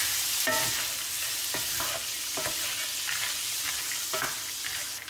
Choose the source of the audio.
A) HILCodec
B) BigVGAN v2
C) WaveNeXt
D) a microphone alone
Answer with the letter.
D